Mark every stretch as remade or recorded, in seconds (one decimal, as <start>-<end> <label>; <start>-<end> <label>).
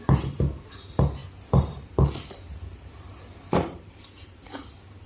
0.0-1.2 recorded; 1.2-3.9 remade; 3.9-5.1 recorded